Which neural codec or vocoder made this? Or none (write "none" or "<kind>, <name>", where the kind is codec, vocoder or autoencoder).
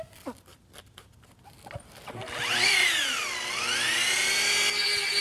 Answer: none